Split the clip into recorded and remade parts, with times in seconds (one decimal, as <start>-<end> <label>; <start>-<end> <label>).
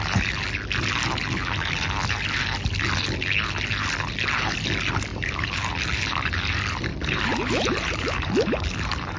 0.0-5.1 recorded; 5.1-6.4 remade; 6.4-6.9 recorded; 6.9-9.2 remade